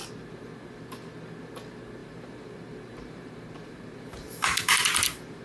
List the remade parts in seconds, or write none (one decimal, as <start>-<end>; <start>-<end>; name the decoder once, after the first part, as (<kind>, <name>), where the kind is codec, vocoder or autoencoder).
2.0-5.4 (vocoder, BigVGAN v2)